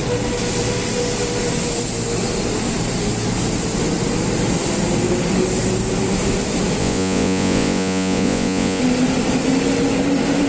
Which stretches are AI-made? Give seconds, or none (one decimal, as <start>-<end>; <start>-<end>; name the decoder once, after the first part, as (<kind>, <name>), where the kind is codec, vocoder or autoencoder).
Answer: 6.8-8.8 (vocoder, Vocos)